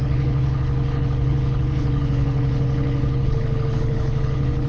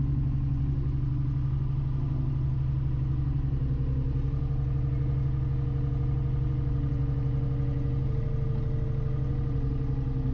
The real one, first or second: second